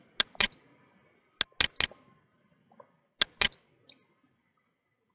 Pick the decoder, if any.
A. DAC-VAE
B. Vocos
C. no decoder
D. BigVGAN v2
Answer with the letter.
C